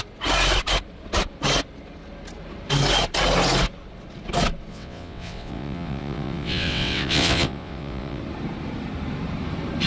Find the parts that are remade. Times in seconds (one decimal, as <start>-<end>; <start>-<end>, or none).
4.7-8.2